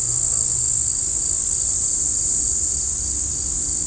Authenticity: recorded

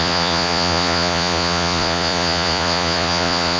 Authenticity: remade